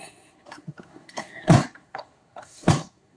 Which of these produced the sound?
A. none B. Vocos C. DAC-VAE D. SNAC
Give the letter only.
D